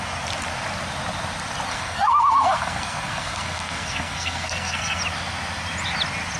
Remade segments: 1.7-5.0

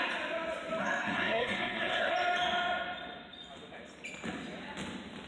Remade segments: 0.8-2.1

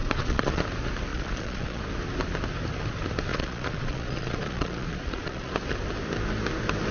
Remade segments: 0.0-0.6; 1.1-1.8; 3.3-5.5

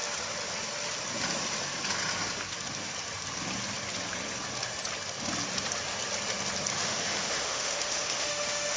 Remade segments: 6.7-8.8

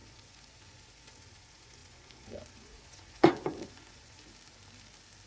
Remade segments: 0.0-4.3

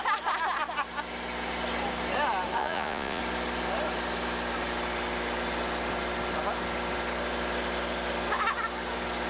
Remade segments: 2.6-3.2

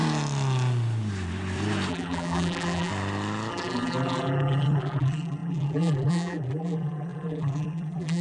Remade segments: 1.9-2.9; 3.5-8.2

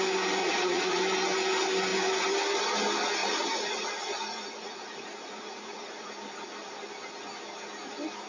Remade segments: 0.4-1.0; 3.2-6.1